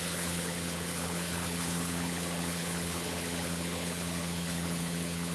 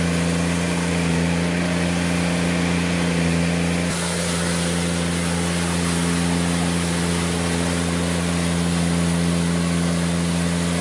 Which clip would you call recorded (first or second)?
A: second